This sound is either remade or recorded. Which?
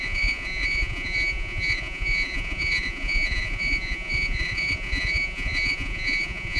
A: remade